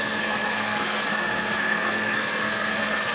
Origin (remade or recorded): remade